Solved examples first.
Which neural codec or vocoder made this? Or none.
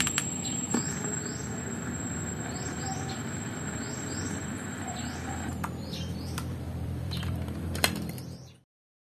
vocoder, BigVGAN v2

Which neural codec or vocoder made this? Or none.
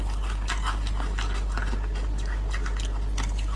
none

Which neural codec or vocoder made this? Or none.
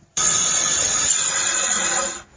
vocoder, Vocos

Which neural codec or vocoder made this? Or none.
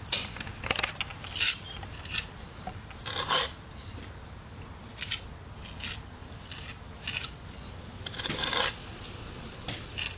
none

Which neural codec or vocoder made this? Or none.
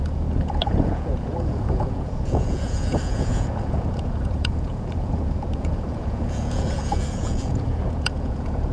vocoder, Vocos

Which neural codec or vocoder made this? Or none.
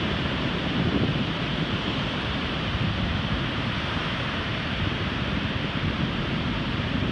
vocoder, BigVGAN v2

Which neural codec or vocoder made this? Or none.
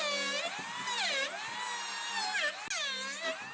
none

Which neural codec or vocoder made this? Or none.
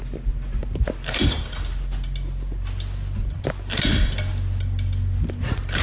none